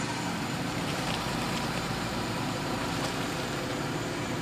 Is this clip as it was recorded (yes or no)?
no